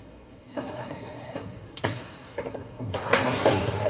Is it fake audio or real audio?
fake